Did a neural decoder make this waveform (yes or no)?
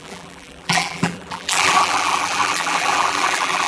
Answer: yes